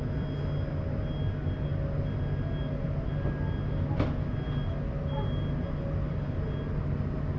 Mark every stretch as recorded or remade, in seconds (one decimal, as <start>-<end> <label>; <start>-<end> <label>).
0.0-7.4 recorded